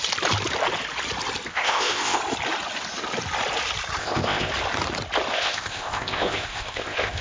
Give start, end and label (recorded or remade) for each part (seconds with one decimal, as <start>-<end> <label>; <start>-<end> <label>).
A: 0.0-1.5 recorded; 1.5-2.2 remade; 2.2-4.0 recorded; 4.0-4.5 remade; 4.5-5.3 recorded; 5.3-7.2 remade